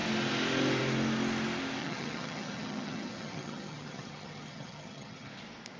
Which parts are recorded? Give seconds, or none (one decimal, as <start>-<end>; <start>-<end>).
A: 0.0-1.8; 5.3-5.8